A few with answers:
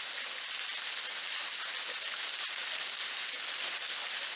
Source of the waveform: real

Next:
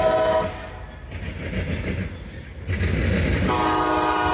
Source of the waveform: real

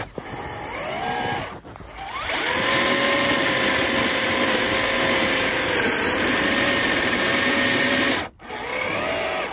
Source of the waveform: real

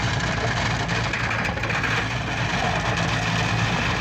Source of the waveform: real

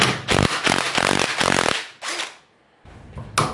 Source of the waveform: real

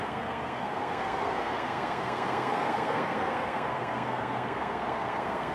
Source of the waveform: fake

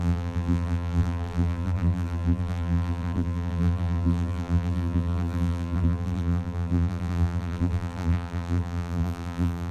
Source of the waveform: fake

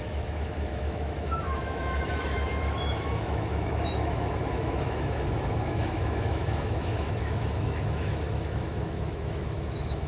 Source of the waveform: fake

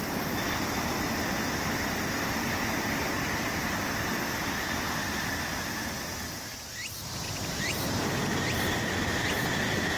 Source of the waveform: real